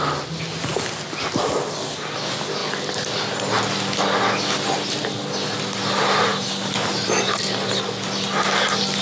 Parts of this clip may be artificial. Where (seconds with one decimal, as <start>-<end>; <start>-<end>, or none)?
none